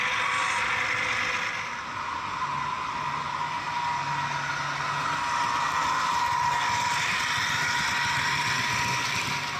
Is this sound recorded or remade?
recorded